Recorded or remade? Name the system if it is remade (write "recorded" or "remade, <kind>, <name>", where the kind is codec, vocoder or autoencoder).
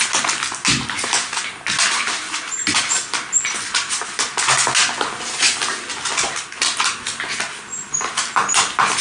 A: recorded